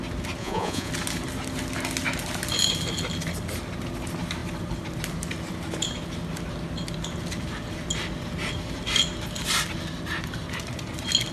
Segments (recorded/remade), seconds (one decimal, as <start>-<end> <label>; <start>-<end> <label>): 0.0-0.4 recorded; 0.4-0.9 remade; 0.9-11.3 recorded